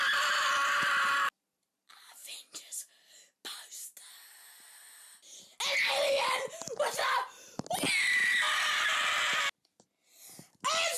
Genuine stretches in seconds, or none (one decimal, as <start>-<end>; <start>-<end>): 0.0-2.2; 2.9-11.0